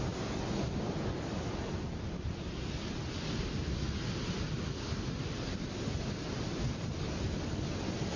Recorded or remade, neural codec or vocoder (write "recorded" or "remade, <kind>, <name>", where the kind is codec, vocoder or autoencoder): recorded